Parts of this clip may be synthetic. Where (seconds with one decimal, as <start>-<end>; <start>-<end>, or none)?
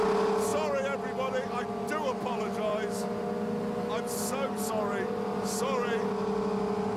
none